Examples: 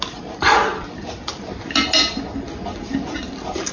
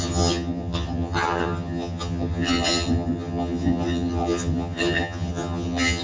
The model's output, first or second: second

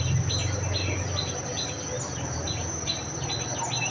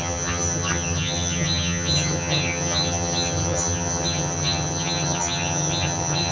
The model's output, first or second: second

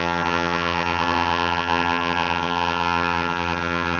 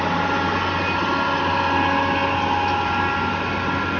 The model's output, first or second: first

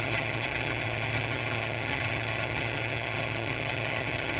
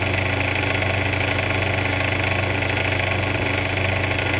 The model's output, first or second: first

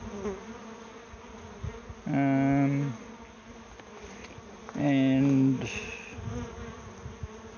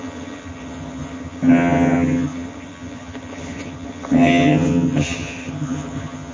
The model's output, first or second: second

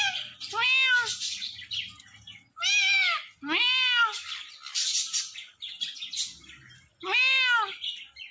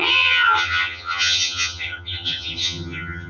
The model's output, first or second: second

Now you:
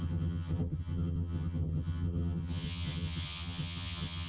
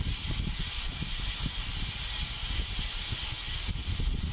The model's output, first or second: first